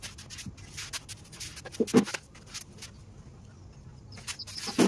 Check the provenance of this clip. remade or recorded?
recorded